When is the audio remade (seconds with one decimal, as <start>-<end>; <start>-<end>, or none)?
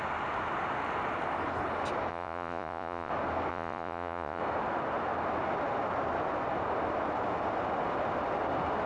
2.1-3.1; 3.5-4.4